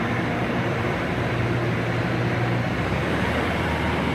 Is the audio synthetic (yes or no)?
yes